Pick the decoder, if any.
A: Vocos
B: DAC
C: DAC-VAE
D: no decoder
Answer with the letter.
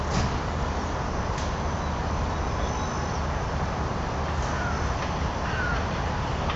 D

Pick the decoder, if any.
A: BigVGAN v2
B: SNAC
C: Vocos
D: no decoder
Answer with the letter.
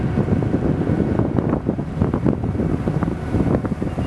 D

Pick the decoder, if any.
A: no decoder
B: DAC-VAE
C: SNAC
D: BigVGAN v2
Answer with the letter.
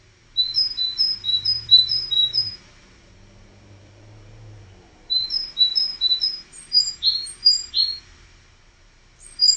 D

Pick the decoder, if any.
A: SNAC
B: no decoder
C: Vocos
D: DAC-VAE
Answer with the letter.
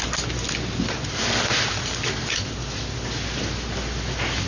B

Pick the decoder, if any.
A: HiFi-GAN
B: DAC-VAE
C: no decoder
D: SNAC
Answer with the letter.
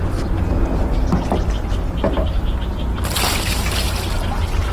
C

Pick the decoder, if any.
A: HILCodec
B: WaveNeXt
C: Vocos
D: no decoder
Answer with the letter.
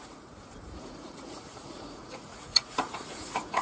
C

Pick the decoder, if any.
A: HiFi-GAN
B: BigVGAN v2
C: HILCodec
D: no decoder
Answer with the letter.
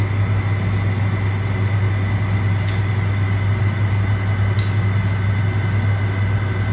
D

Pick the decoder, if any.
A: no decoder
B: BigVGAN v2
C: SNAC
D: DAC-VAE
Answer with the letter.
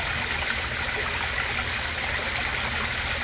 A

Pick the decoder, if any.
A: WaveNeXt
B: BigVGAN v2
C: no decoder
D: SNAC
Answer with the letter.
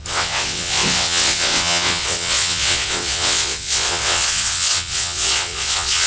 A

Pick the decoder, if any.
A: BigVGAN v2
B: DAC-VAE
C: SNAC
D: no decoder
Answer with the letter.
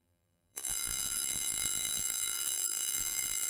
A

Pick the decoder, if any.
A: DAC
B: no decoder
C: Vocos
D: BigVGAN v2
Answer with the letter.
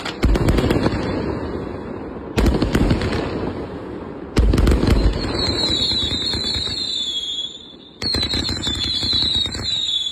B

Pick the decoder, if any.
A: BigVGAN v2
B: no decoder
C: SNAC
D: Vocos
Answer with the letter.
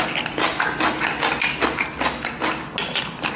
B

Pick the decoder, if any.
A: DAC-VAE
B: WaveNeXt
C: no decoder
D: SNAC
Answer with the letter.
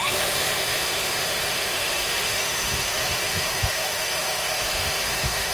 A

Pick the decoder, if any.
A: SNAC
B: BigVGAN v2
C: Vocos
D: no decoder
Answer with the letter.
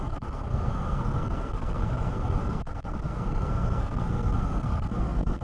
A